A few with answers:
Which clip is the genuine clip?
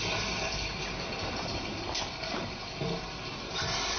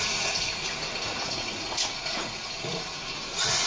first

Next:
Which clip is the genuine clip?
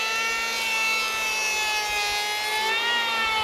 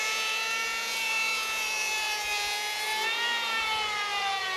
first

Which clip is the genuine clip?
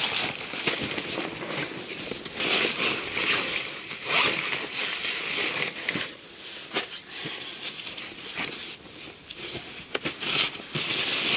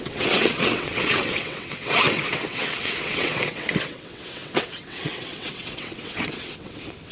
first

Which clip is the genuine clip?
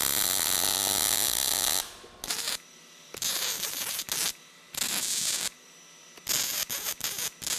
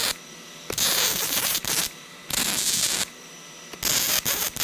first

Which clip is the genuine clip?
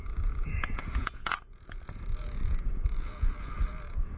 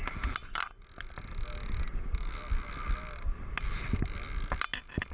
second